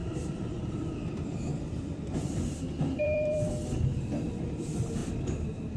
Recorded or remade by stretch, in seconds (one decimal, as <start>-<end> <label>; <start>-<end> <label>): 0.0-3.5 remade; 3.5-5.8 recorded